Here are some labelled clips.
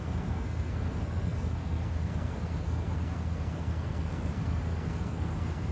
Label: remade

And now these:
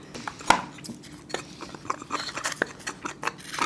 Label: recorded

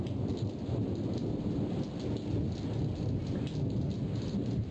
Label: recorded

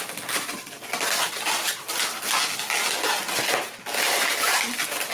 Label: recorded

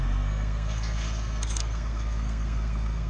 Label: remade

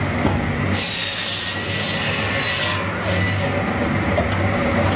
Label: recorded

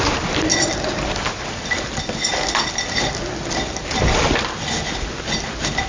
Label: recorded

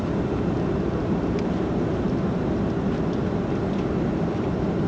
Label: recorded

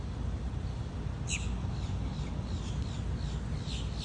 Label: recorded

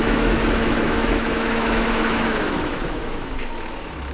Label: remade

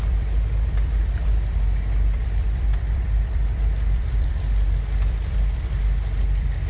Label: remade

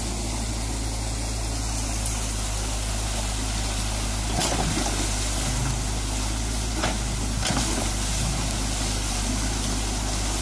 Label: recorded